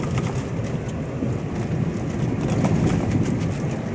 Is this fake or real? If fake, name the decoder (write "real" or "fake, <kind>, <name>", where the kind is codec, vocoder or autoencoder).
real